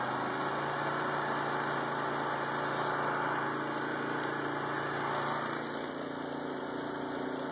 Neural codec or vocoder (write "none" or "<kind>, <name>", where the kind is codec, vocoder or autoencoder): none